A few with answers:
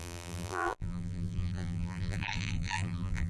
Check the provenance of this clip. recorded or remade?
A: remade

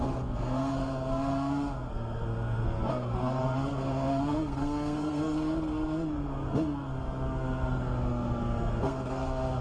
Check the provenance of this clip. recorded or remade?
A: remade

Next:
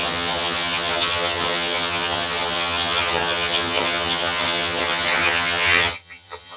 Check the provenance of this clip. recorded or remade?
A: remade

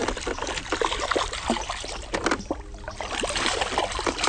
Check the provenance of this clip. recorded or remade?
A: recorded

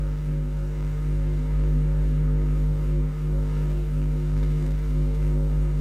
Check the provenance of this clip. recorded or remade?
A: remade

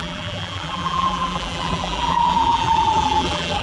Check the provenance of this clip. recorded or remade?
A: remade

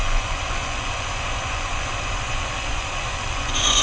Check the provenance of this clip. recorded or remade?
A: remade